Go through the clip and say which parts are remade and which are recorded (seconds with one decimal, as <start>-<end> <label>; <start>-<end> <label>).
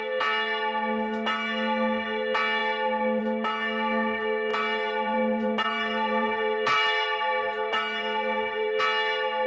0.0-4.5 recorded; 4.5-8.8 remade; 8.8-9.5 recorded